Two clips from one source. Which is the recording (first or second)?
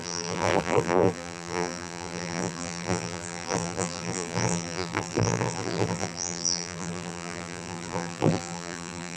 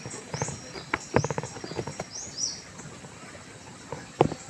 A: second